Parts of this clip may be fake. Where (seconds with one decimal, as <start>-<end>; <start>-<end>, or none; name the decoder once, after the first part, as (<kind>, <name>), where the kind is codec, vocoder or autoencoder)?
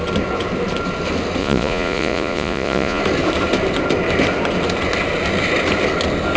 1.4-3.0 (vocoder, Vocos)